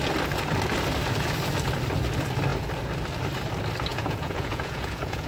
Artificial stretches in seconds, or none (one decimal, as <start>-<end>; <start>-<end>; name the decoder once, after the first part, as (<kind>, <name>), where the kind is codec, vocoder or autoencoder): 3.9-5.3 (vocoder, Vocos)

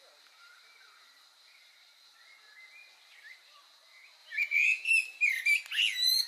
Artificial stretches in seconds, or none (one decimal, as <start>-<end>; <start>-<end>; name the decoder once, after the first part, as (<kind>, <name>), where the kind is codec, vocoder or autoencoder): 4.2-4.9 (vocoder, Vocos)

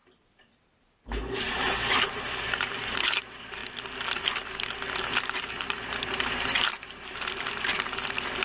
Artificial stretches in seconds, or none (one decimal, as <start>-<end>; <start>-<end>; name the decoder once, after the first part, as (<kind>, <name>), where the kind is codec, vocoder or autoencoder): 0.0-3.6 (vocoder, BigVGAN v2); 5.2-8.4

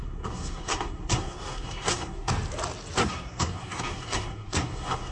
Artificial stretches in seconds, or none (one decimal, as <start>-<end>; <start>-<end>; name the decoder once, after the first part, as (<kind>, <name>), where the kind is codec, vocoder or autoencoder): 0.0-2.3 (codec, SNAC); 3.0-5.1

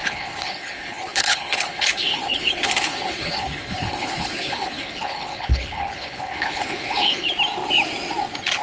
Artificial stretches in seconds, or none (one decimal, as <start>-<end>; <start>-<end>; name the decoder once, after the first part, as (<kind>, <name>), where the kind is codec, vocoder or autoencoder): 0.0-7.3 (codec, HILCodec)

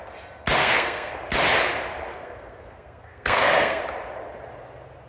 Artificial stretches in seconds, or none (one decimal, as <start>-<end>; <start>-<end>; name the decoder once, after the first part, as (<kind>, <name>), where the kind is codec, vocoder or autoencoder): 0.6-1.1 (codec, SNAC); 2.1-3.8

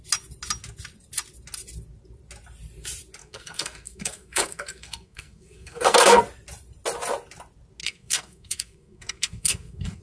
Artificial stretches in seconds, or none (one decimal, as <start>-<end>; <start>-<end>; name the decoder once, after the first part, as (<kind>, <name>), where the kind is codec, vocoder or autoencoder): 3.2-6.2 (codec, SNAC); 7.8-10.0

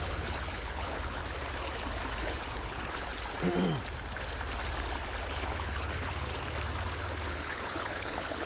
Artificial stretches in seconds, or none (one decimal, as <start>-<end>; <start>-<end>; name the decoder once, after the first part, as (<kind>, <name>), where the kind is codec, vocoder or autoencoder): 0.0-1.2 (codec, HILCodec); 2.2-3.1; 5.3-6.3; 7.3-8.5